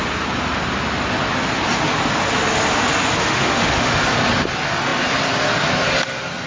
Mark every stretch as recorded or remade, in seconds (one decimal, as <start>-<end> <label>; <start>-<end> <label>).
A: 0.0-3.2 recorded; 3.2-4.0 remade; 4.0-6.5 recorded